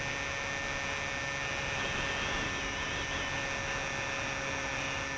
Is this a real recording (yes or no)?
yes